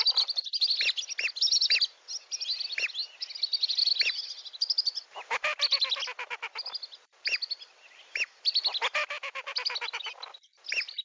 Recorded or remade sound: recorded